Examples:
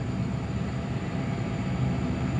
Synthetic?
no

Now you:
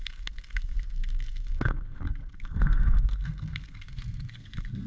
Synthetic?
yes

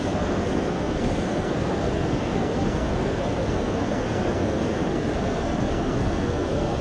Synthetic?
yes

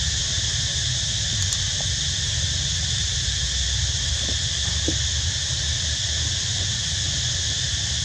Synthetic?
no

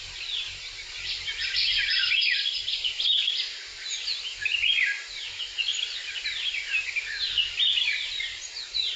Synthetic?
no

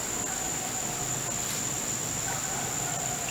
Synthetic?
no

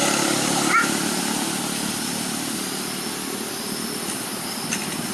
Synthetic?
no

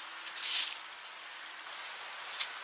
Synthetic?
no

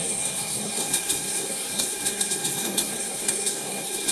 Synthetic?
yes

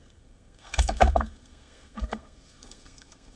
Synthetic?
yes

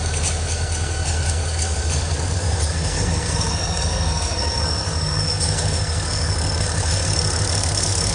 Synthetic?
yes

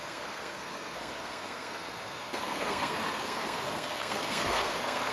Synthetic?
yes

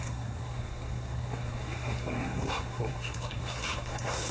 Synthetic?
yes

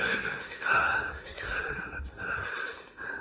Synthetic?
yes